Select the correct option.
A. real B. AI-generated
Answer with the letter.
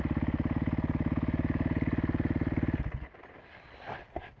A